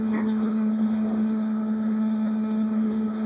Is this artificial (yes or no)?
yes